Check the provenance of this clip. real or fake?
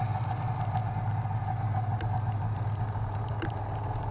real